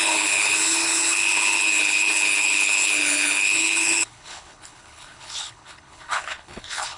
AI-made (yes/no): yes